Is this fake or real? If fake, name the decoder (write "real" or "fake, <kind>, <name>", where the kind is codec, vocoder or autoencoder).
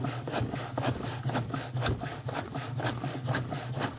fake, codec, DAC